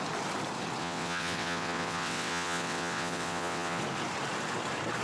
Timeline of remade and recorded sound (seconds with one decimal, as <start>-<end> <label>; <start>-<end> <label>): 0.0-0.8 recorded; 0.8-3.8 remade; 3.8-5.0 recorded